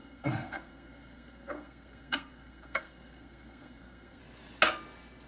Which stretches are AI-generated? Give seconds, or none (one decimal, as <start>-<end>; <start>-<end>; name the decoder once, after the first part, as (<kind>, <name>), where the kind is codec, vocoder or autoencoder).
0.0-4.2 (codec, SNAC)